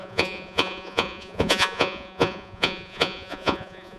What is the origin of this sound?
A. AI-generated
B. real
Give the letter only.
A